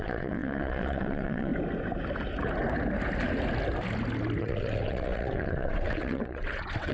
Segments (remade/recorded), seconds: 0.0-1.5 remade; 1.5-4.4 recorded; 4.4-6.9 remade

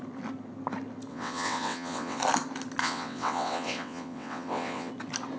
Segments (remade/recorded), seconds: 0.0-1.1 recorded; 1.1-2.2 remade; 2.2-2.8 recorded; 2.8-4.9 remade; 4.9-5.4 recorded

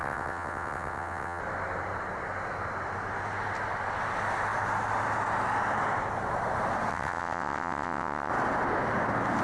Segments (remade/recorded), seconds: 0.0-1.4 remade; 1.4-6.9 recorded; 6.9-8.3 remade; 8.3-9.4 recorded

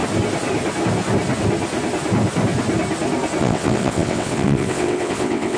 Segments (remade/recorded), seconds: 0.0-3.4 recorded; 3.4-5.6 remade